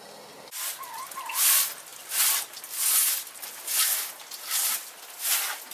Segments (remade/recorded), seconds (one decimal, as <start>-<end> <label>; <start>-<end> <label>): 0.0-5.7 recorded